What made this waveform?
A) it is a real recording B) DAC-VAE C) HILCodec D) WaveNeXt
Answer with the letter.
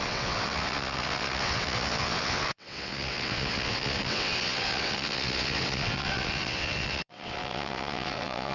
D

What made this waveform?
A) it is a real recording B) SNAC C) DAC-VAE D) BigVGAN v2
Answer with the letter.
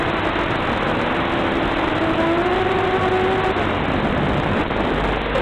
A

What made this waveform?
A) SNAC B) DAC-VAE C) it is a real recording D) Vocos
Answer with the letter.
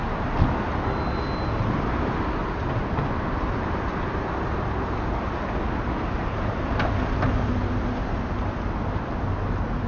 C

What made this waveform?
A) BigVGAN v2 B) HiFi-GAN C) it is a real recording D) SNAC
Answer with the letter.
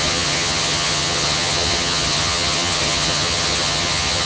B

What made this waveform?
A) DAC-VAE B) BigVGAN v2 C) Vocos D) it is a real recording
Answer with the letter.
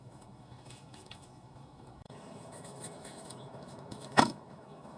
A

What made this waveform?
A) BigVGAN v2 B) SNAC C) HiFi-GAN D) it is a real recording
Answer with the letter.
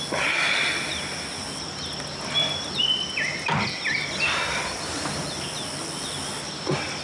D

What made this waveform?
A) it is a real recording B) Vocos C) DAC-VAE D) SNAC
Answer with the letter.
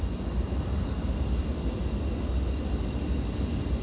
A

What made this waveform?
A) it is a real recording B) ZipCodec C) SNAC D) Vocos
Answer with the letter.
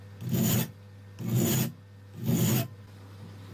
A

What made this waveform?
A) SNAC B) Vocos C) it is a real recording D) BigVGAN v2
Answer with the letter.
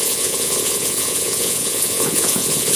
B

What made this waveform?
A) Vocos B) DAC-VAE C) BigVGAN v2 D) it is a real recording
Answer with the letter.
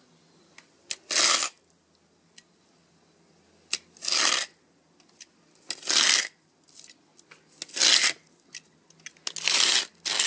D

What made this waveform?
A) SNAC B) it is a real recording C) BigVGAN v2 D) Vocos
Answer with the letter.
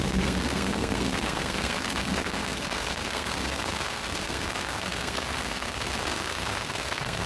A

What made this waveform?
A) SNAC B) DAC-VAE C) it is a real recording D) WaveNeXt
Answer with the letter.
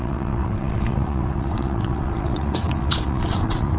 D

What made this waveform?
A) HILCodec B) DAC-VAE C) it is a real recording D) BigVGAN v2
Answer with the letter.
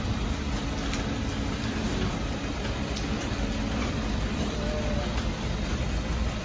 C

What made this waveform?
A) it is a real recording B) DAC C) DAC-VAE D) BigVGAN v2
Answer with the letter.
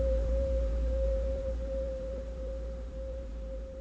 D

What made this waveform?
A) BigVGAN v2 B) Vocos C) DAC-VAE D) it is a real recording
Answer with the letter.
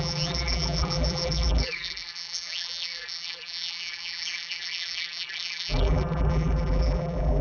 A